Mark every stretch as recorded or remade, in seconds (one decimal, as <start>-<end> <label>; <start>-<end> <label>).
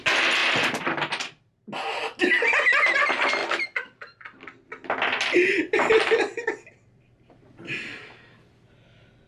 0.0-9.3 recorded